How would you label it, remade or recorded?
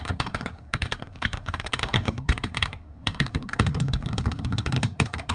remade